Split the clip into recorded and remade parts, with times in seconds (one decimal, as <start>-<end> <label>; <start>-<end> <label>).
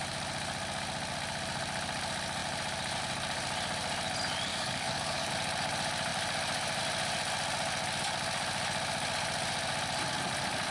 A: 0.0-4.5 recorded; 4.5-5.3 remade; 5.3-10.7 recorded